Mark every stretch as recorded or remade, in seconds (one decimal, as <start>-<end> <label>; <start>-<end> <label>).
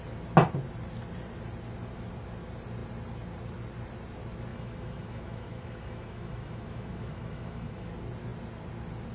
0.0-4.5 recorded; 4.5-7.9 remade; 7.9-9.1 recorded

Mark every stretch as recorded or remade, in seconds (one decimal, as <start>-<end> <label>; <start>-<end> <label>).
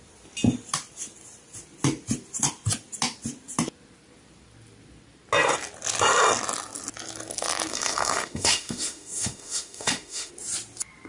0.0-7.7 recorded; 7.7-10.3 remade; 10.3-11.1 recorded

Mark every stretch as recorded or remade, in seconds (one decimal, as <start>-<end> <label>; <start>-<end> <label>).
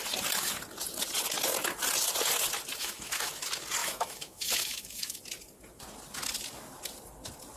0.0-2.8 recorded; 2.8-3.3 remade; 3.3-3.8 recorded; 3.8-5.2 remade; 5.2-7.6 recorded